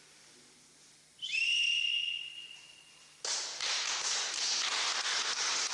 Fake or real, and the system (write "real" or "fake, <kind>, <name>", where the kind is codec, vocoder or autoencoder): real